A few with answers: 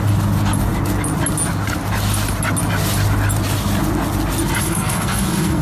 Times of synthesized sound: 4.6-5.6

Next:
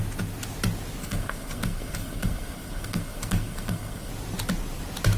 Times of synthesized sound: 1.0-4.1

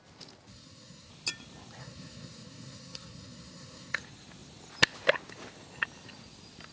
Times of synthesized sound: 0.5-1.1; 1.8-4.0

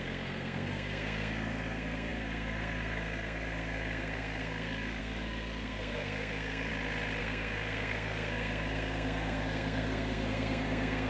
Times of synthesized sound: 0.0-6.7; 7.2-11.1

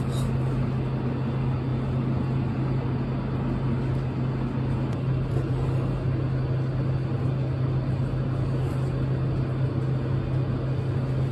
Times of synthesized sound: none

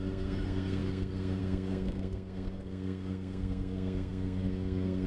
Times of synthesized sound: 0.0-5.1